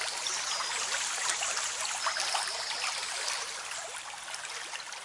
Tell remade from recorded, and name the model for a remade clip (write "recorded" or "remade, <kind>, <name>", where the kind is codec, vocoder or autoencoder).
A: recorded